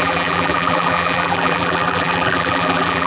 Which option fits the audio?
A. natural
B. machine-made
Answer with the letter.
B